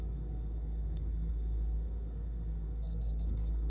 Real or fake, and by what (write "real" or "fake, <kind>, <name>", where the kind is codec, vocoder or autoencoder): fake, codec, SNAC